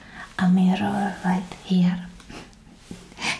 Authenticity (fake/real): real